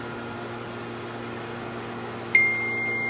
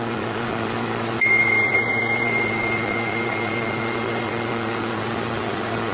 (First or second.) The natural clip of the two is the first